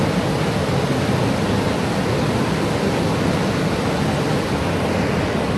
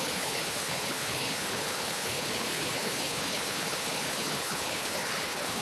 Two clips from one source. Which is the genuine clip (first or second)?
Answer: first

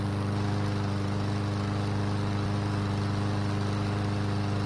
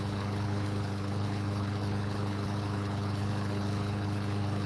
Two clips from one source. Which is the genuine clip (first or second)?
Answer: first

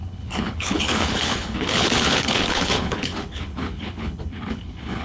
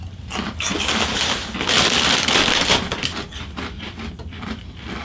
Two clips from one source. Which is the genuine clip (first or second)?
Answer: second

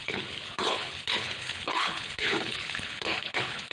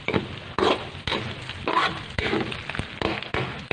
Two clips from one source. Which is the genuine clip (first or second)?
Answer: second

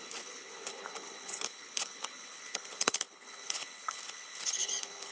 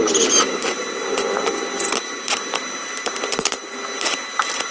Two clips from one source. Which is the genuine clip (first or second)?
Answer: second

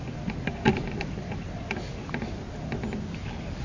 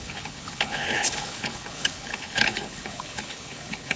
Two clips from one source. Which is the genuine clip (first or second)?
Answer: first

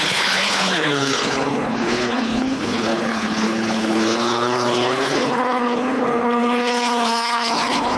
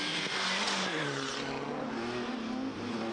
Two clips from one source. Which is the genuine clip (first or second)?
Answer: second